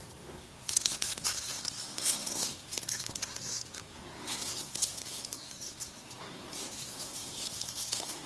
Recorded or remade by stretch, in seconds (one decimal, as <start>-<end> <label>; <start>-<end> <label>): 0.0-8.3 remade